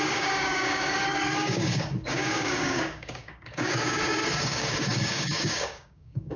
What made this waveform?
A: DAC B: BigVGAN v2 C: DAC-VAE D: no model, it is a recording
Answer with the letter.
A